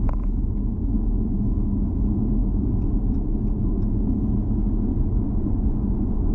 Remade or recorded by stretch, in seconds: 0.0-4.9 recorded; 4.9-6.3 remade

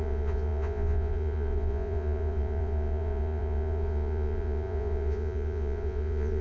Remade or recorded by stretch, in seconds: 0.0-6.4 remade

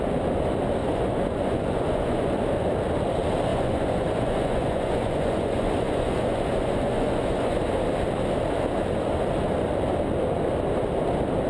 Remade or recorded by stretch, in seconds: 0.0-0.8 recorded; 0.8-2.4 remade; 2.4-3.5 recorded; 3.5-7.6 remade; 7.6-11.5 recorded

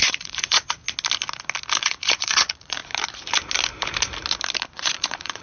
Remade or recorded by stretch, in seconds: 0.0-0.8 remade; 0.8-1.8 recorded; 1.8-2.8 remade; 2.8-4.7 recorded; 4.7-5.4 remade

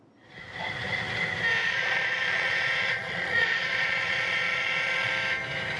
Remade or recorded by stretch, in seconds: 0.0-1.6 recorded; 1.6-5.1 remade; 5.1-5.8 recorded

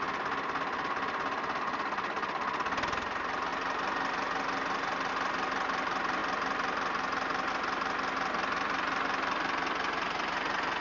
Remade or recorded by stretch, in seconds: 0.0-10.8 recorded

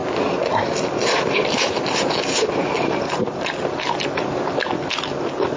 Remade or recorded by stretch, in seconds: 0.0-5.6 recorded